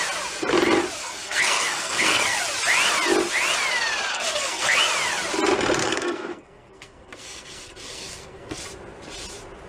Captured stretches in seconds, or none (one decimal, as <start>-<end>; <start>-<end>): 0.0-1.0; 2.4-4.1; 4.8-5.8; 8.6-9.7